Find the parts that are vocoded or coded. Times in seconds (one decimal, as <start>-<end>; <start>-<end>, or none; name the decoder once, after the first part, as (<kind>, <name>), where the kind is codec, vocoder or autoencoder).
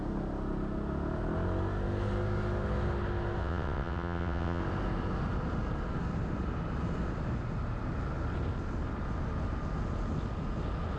3.4-4.6 (vocoder, WaveNeXt)